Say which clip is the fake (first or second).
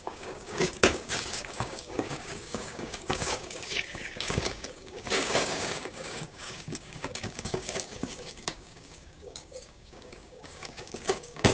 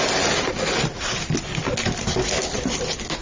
first